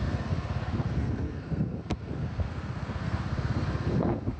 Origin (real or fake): fake